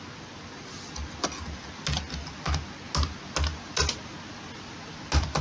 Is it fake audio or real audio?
real